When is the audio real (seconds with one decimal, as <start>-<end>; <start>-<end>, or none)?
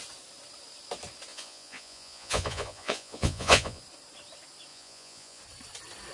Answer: 0.0-1.3; 3.8-4.7; 5.4-6.1